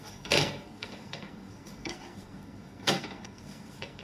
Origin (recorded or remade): remade